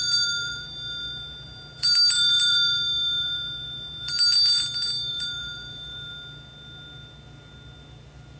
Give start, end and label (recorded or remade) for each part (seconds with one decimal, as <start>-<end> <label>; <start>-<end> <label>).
0.0-4.1 remade; 4.1-5.1 recorded; 5.1-6.1 remade; 6.1-8.4 recorded